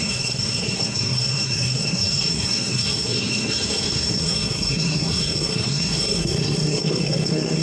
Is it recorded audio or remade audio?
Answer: remade